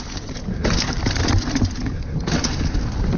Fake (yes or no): no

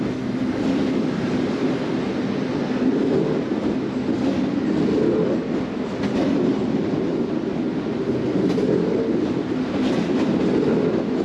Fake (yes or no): no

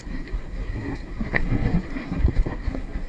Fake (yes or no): yes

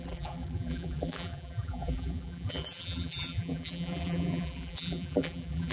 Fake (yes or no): yes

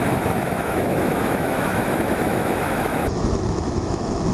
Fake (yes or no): yes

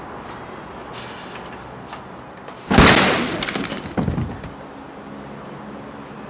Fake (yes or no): no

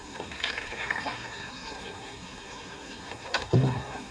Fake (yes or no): yes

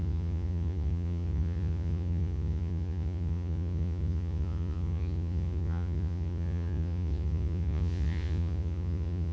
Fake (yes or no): yes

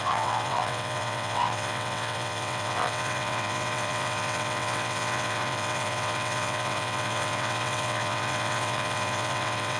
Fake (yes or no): yes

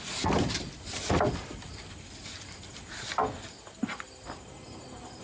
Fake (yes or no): no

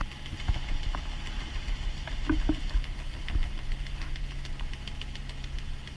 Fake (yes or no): no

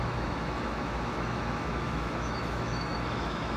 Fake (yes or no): yes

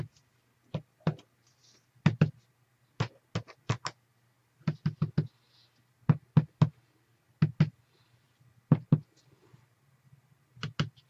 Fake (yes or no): no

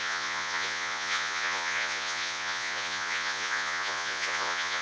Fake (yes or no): yes